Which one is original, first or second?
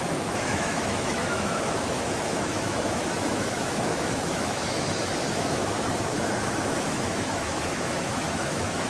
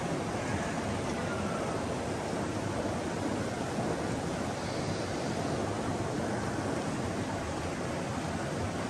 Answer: second